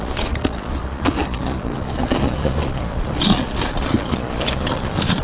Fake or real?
fake